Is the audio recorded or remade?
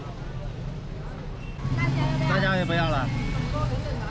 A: recorded